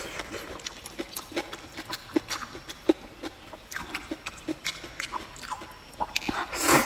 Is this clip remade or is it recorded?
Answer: recorded